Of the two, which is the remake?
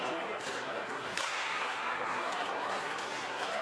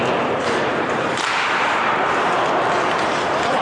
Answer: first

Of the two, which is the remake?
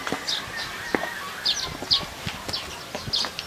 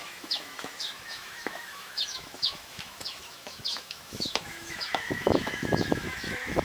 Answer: second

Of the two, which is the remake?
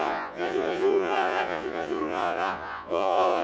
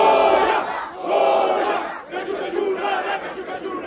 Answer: first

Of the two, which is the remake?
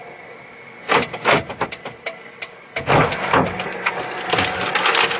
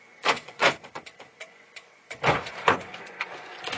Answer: second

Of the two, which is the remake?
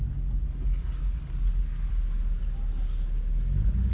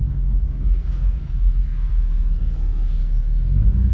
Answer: second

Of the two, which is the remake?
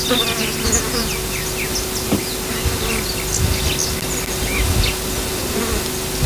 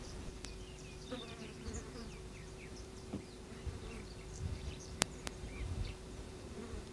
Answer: second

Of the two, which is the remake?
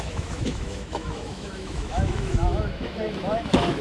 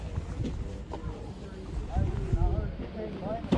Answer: first